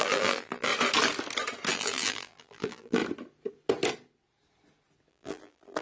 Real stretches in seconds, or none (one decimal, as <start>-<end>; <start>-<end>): 0.7-1.7; 3.0-5.1